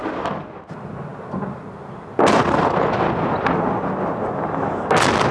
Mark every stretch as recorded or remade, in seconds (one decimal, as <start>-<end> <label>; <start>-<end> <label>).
0.0-5.3 recorded